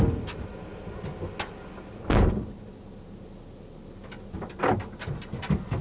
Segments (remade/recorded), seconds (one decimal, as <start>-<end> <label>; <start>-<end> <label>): 0.0-5.8 recorded